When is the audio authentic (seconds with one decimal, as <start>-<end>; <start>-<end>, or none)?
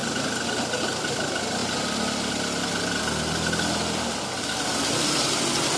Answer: 0.0-5.8